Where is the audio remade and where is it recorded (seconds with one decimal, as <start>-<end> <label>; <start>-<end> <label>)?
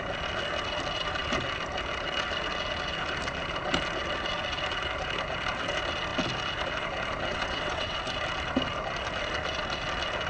0.0-7.3 recorded; 7.3-8.0 remade; 8.0-10.3 recorded